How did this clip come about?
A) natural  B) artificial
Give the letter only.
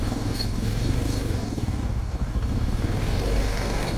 B